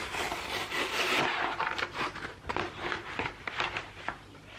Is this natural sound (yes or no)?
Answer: no